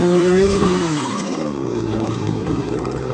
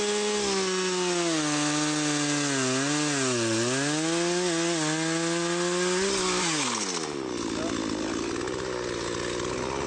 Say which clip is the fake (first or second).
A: first